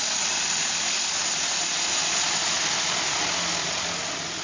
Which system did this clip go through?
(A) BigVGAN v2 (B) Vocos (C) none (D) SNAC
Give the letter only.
C